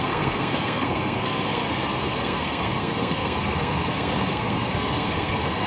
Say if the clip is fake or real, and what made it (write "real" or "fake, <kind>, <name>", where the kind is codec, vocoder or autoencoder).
fake, codec, SNAC